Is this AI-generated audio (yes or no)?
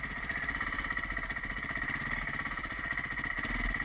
no